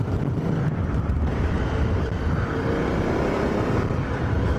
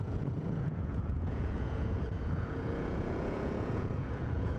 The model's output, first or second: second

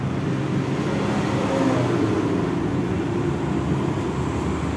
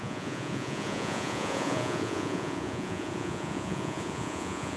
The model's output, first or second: second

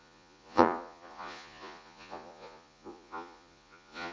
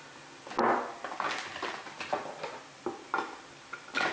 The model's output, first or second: first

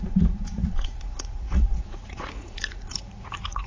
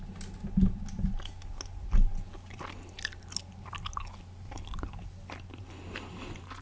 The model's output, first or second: first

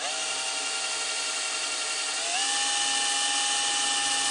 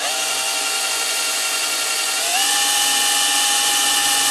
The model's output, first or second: second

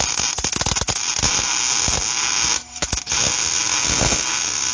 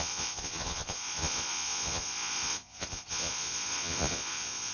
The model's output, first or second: second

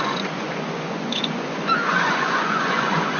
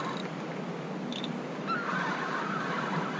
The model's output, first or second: first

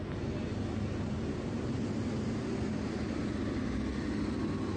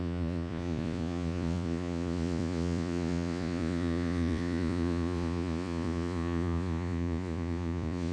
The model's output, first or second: second